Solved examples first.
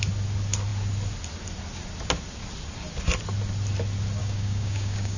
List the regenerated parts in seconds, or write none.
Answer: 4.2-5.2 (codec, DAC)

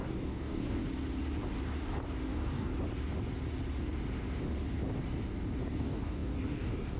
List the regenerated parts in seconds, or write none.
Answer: 0.0-0.8 (codec, DAC); 2.2-2.7; 5.8-7.0

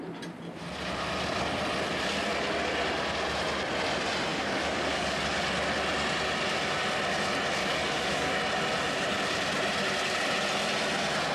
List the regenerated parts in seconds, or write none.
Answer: 4.3-5.2 (codec, DAC); 7.6-8.4

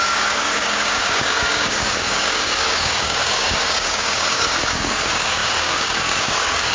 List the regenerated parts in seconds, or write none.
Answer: 0.0-6.7 (codec, DAC)